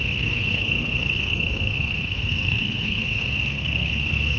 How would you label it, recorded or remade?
remade